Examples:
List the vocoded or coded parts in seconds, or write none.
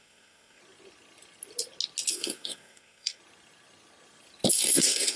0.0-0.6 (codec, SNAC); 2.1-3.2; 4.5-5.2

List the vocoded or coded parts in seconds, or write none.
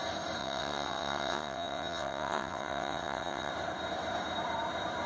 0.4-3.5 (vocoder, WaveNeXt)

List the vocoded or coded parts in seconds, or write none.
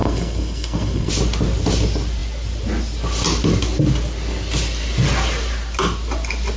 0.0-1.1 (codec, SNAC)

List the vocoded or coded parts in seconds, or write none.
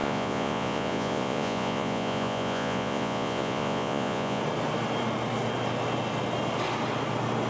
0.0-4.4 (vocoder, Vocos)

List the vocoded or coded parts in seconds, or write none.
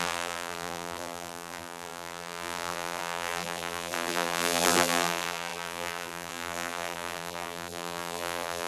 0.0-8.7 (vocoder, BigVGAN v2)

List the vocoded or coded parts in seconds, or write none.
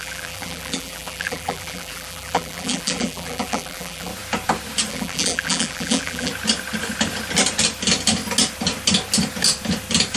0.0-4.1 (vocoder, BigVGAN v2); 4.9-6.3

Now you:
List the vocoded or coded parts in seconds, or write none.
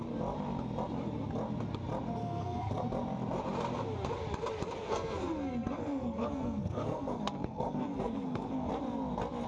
2.2-2.7 (codec, SNAC); 4.8-8.7